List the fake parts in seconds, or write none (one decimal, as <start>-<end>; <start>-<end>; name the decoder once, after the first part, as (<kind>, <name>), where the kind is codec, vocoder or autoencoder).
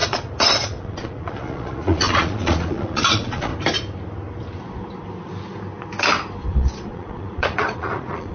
0.0-3.5 (vocoder, Vocos); 6.5-8.3